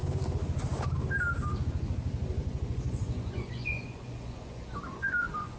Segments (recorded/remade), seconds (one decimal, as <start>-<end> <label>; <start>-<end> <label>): 0.0-2.4 recorded; 2.4-5.6 remade